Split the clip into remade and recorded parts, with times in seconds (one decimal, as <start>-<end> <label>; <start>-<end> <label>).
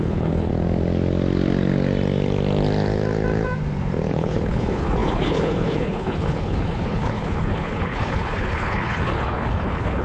0.0-0.5 remade; 0.5-4.1 recorded; 4.1-10.0 remade